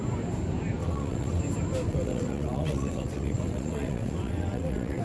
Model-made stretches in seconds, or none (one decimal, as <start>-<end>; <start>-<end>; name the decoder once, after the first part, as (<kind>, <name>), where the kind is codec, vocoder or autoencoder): 0.8-1.4 (vocoder, WaveNeXt); 1.9-5.0